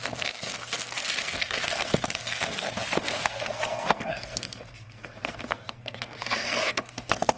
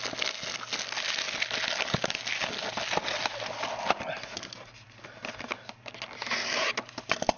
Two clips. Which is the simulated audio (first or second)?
first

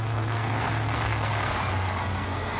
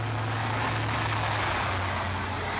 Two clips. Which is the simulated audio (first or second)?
first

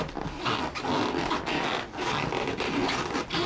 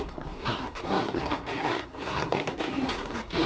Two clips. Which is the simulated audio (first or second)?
second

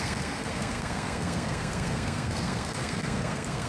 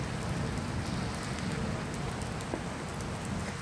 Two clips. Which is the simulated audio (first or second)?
first